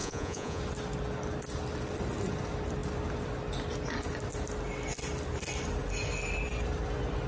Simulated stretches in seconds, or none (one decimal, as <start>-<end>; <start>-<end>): 0.0-0.6